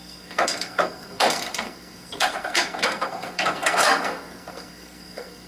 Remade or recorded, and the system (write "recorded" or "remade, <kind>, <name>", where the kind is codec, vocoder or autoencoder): remade, codec, SNAC